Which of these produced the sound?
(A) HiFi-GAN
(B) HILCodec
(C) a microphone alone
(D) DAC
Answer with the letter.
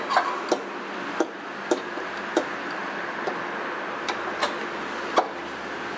C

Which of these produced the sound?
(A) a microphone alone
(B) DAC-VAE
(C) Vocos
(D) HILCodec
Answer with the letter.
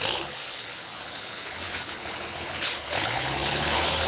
D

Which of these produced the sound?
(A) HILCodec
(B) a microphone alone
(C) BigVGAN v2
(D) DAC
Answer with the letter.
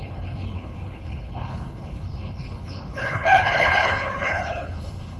A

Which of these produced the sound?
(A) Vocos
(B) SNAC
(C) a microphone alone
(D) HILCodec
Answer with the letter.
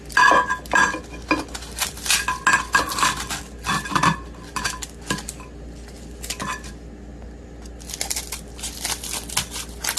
C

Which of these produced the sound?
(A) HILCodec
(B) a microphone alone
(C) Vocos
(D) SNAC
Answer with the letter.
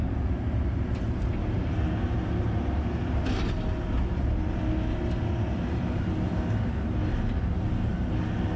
B